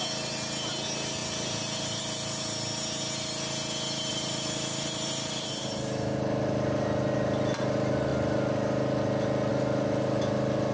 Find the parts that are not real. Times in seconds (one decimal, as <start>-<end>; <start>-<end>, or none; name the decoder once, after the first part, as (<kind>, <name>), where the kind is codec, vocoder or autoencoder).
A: 1.2-2.0 (vocoder, BigVGAN v2); 4.1-5.3